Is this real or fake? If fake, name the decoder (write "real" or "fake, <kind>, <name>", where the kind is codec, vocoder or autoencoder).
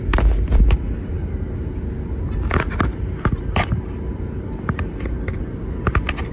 real